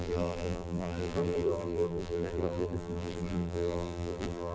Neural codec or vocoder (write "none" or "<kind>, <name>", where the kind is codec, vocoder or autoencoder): vocoder, BigVGAN v2